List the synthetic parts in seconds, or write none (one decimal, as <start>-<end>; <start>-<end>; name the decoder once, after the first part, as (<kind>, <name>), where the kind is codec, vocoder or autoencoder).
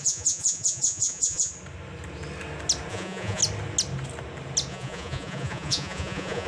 0.0-1.5 (vocoder, Vocos); 2.9-3.4; 4.7-6.5